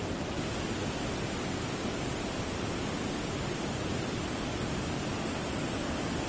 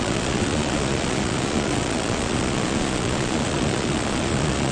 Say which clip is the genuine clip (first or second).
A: first